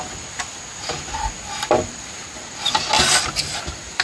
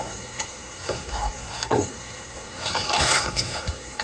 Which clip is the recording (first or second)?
first